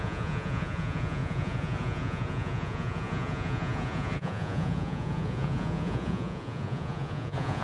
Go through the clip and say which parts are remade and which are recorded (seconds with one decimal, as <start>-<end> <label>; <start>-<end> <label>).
0.0-7.6 remade